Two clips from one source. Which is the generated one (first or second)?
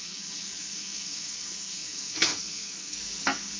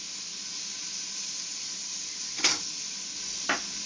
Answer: first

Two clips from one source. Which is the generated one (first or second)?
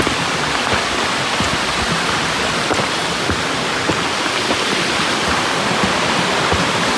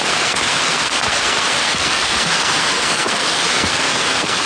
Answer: second